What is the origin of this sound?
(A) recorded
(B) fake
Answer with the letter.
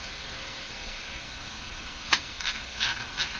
B